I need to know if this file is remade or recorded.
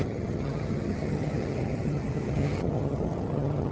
remade